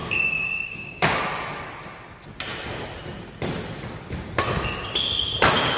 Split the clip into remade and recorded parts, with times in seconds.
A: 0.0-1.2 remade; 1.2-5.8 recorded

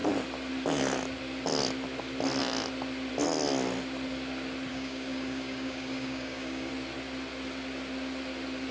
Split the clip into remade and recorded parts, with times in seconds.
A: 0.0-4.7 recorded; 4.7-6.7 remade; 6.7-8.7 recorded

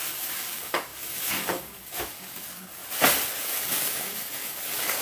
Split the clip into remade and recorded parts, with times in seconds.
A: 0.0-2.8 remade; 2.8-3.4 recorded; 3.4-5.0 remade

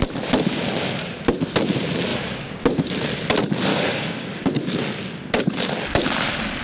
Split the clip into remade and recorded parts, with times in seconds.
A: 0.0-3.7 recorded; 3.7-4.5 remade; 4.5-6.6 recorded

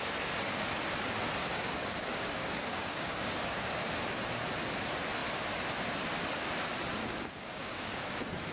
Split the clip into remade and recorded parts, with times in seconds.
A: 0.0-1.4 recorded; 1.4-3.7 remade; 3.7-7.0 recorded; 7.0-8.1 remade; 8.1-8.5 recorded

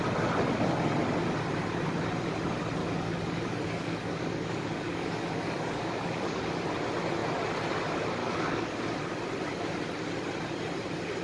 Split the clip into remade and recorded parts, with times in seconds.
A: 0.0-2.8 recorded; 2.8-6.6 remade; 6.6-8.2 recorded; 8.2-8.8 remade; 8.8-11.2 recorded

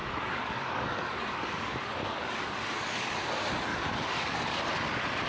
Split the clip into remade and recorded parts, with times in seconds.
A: 0.0-3.2 remade; 3.2-3.7 recorded; 3.7-4.6 remade; 4.6-5.3 recorded